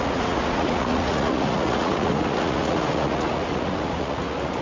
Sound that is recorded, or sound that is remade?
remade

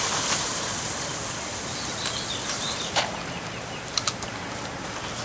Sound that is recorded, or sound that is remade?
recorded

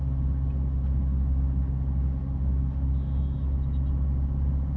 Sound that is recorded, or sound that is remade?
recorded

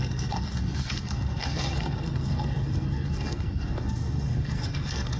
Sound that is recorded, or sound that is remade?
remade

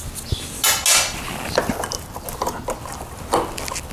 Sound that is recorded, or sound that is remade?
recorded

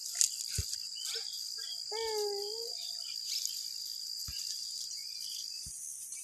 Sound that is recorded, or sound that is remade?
recorded